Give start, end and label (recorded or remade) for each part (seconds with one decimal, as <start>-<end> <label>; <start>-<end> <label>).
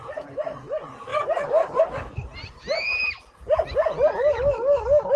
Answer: 0.0-1.1 recorded; 1.1-1.8 remade; 1.8-2.9 recorded; 2.9-4.1 remade; 4.1-5.2 recorded